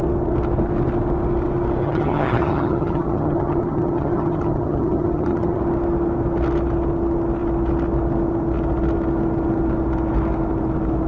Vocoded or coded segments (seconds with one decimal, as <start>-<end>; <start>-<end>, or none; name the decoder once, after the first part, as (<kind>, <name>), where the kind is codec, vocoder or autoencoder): 1.8-5.6 (vocoder, HiFi-GAN)